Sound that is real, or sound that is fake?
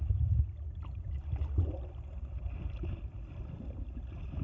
real